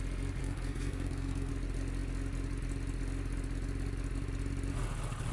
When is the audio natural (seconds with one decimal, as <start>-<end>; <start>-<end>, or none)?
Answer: 0.0-0.4; 1.5-5.3